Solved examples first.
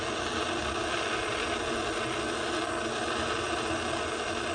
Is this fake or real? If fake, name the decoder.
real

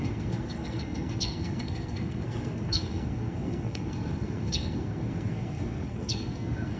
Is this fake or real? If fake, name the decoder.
fake, codec, SNAC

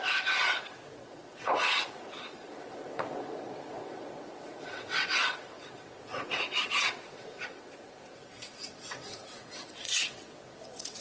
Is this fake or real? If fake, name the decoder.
fake, vocoder, WaveNeXt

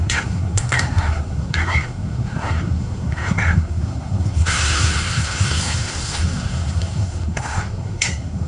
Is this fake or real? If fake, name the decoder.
fake, codec, SNAC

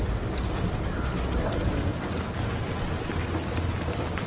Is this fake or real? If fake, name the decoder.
real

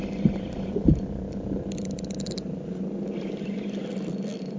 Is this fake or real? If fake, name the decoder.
real